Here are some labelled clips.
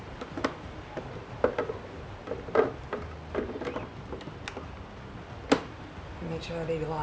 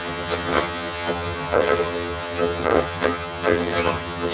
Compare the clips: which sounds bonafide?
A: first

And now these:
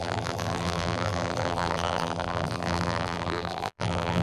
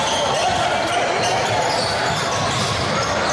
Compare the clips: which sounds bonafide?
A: second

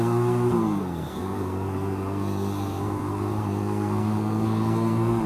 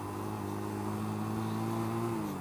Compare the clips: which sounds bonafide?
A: second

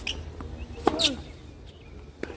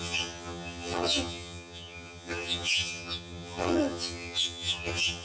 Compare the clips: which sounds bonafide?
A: first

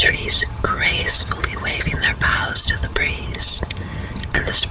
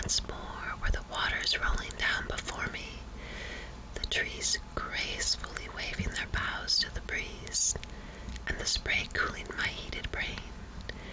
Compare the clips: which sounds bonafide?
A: second